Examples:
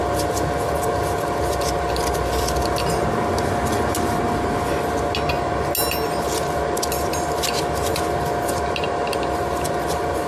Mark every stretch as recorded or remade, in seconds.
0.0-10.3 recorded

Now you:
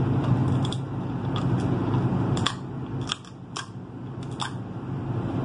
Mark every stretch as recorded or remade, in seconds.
0.0-5.4 recorded